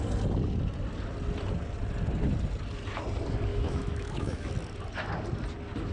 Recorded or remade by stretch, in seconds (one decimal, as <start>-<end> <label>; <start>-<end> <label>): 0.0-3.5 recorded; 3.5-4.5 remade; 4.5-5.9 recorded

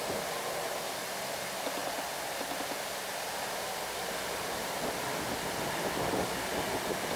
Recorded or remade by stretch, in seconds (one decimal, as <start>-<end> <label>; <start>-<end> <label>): 0.0-1.8 recorded; 1.8-5.5 remade; 5.5-7.2 recorded

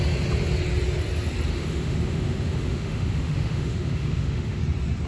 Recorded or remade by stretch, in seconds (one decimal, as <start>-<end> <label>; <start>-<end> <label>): 0.0-1.5 recorded; 1.5-4.6 remade; 4.6-5.1 recorded